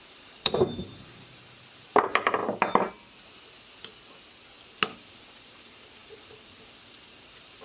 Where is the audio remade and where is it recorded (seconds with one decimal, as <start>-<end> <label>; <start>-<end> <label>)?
0.0-2.4 remade; 2.4-5.1 recorded; 5.1-7.6 remade